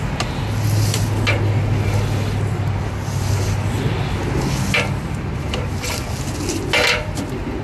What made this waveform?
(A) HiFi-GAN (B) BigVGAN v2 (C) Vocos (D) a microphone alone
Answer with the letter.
D